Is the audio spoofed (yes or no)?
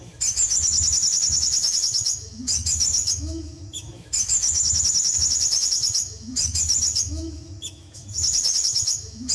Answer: yes